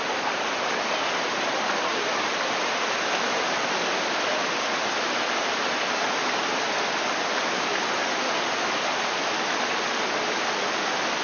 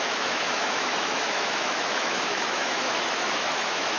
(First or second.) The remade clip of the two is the second